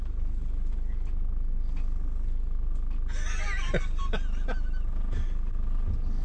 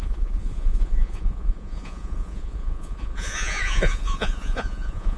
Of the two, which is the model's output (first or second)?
second